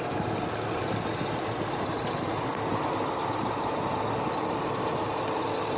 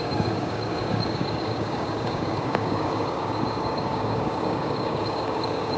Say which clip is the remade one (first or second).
second